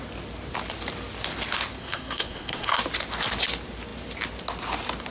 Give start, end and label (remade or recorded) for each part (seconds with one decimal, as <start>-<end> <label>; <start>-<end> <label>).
0.0-1.8 recorded; 1.8-2.8 remade; 2.8-5.1 recorded